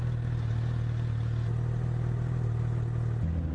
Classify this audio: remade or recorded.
recorded